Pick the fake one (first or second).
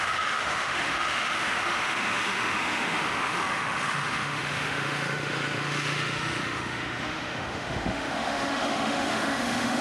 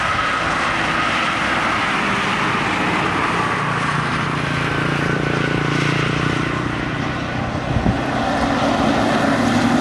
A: first